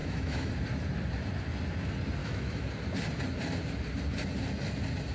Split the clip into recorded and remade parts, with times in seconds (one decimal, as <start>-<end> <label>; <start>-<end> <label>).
0.0-0.5 remade; 0.5-2.2 recorded; 2.2-2.7 remade; 2.7-5.1 recorded